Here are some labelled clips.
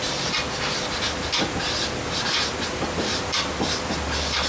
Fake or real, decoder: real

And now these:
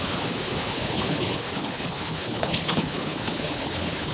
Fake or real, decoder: fake, codec, HILCodec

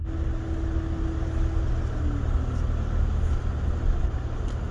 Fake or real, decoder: real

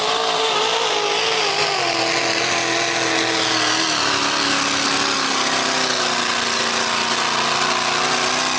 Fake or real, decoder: real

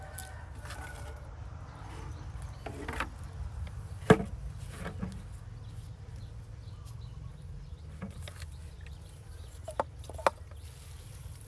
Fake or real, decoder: real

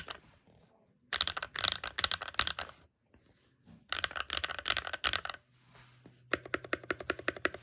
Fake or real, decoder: real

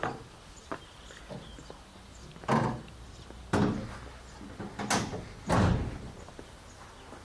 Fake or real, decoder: real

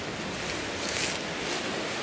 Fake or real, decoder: real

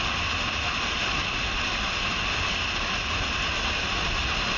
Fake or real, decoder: real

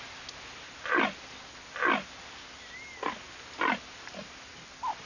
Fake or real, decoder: real